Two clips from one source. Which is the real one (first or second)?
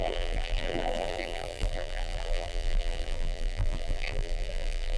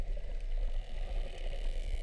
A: second